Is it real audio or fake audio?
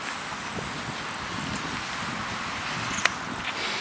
real